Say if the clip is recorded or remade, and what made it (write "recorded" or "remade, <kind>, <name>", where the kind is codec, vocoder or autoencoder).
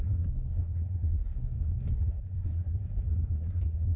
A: remade, codec, SNAC